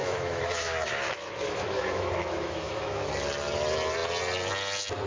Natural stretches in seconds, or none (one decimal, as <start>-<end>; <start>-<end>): 3.1-5.1

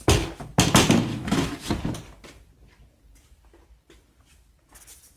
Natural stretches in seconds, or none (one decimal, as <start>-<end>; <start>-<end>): 0.0-1.1; 1.7-5.2